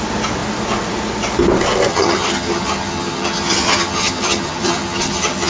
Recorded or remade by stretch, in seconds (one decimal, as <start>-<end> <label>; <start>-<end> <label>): 0.0-1.9 recorded; 1.9-5.5 remade